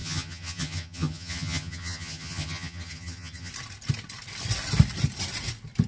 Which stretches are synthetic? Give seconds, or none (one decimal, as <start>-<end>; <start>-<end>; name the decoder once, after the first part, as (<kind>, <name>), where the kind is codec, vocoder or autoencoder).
0.0-3.5 (vocoder, HiFi-GAN)